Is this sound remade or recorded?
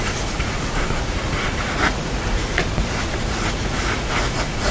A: remade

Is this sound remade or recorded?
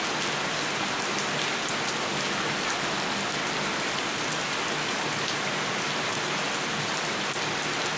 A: recorded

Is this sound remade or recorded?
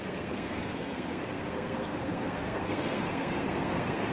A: remade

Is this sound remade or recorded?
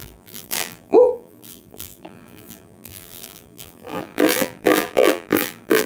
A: remade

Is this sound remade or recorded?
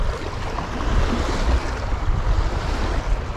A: recorded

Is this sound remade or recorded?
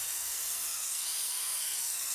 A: remade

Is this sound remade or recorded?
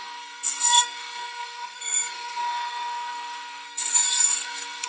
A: remade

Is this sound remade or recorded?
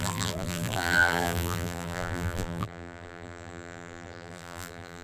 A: remade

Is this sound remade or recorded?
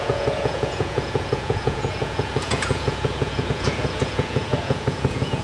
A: remade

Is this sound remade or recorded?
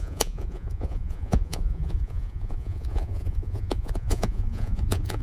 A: remade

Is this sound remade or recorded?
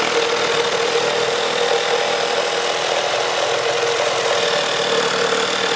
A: recorded